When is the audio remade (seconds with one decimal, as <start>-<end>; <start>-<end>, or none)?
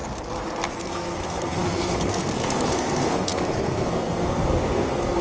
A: 0.7-5.2